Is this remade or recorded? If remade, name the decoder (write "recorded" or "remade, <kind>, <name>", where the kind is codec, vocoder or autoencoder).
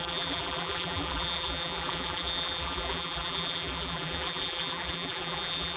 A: remade, vocoder, BigVGAN v2